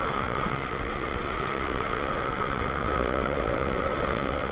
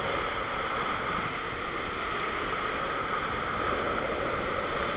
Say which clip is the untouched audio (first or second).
second